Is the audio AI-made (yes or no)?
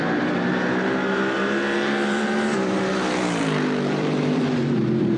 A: yes